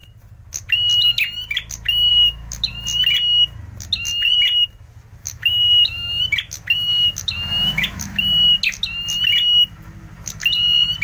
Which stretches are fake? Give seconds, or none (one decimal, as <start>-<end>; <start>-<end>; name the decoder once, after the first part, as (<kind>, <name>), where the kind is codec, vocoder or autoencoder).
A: 2.1-2.7 (autoencoder, DAC-VAE); 5.2-6.2; 6.9-8.2